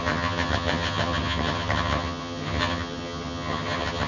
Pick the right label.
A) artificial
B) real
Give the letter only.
A